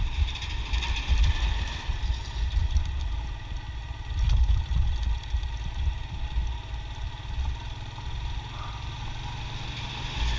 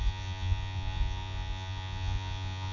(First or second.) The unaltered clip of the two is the first